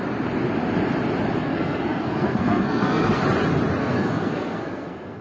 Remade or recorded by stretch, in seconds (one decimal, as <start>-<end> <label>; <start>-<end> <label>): 0.0-1.4 recorded; 1.4-3.2 remade; 3.2-3.8 recorded; 3.8-5.2 remade